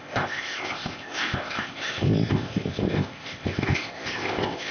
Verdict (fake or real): fake